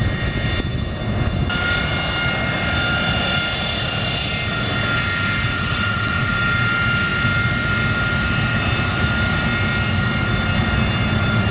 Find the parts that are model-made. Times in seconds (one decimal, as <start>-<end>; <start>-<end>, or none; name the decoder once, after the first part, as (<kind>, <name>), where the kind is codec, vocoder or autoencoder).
5.5-6.3 (vocoder, WaveNeXt)